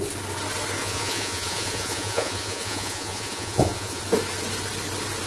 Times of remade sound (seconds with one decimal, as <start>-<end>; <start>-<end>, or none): 0.8-4.0